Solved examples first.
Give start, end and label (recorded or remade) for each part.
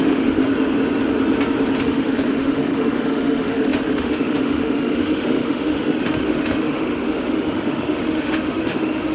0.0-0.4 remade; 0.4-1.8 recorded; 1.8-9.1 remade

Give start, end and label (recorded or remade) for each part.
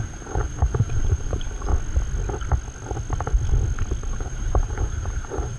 0.0-1.7 remade; 1.7-4.1 recorded; 4.1-5.6 remade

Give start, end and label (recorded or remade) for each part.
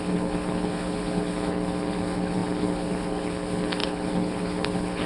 0.0-5.1 remade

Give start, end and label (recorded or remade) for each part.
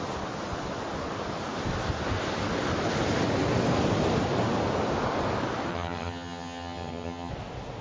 0.0-5.7 recorded; 5.7-7.3 remade; 7.3-7.8 recorded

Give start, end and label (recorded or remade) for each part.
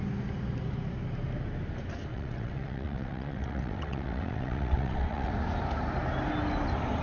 0.0-2.1 recorded; 2.1-5.3 remade; 5.3-7.0 recorded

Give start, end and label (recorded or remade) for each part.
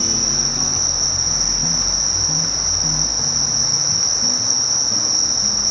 0.0-5.7 recorded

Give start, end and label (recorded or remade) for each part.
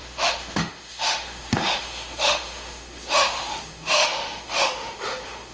0.0-5.5 remade